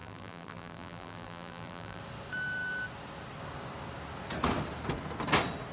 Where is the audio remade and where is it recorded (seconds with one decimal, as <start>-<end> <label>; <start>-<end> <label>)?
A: 0.0-2.0 remade; 2.0-5.7 recorded